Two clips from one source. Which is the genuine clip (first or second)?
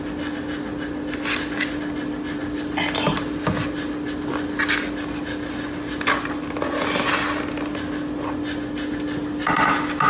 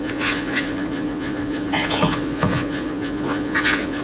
first